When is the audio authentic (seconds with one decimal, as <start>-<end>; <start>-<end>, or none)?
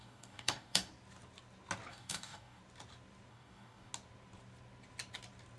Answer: 0.9-1.9; 2.6-3.3; 3.9-5.6